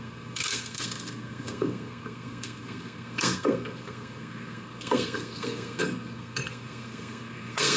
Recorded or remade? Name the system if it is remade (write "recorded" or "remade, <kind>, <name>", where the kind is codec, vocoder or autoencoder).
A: remade, codec, SNAC